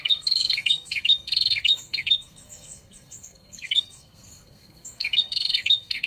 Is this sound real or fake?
fake